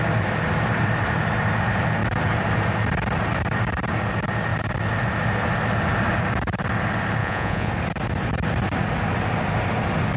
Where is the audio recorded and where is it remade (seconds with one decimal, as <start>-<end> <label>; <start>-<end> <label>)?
0.0-7.2 recorded; 7.2-7.7 remade; 7.7-10.2 recorded